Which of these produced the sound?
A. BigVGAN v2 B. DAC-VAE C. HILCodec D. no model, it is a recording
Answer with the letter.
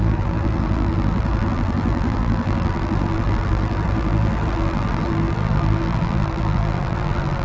A